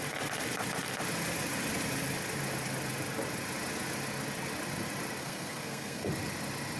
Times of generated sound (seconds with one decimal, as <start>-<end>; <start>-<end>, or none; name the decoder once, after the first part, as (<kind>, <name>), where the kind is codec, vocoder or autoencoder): 5.2-6.1 (codec, SNAC)